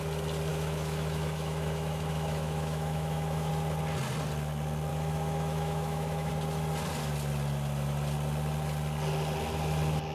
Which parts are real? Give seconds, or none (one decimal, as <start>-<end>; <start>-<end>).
0.0-0.5; 3.5-4.9; 6.3-10.1